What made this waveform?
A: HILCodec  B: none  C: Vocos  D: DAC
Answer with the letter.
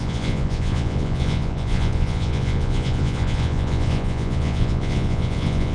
C